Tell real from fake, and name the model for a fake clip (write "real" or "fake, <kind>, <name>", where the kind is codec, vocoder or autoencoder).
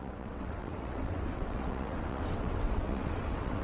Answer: fake, vocoder, WaveNeXt